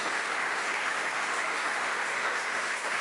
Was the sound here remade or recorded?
remade